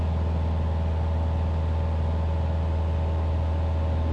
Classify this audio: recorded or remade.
recorded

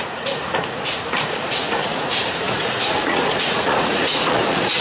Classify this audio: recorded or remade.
remade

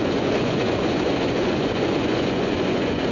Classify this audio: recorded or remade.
remade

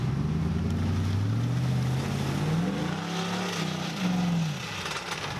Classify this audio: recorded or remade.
recorded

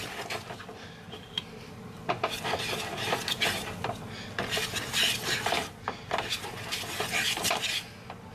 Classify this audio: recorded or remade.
recorded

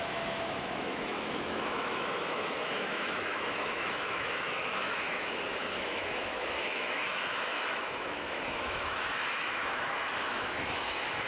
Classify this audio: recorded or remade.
remade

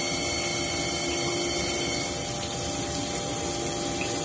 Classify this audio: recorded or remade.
recorded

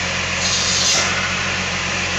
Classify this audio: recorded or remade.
remade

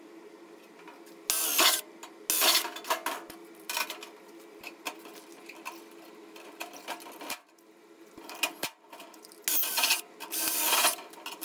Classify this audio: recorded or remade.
recorded